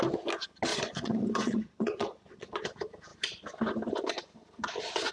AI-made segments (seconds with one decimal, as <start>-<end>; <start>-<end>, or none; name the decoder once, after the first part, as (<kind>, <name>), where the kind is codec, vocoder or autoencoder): 0.7-2.6 (vocoder, Vocos)